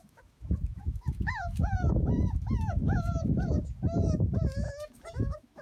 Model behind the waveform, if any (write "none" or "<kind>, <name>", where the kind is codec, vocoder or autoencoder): autoencoder, DAC-VAE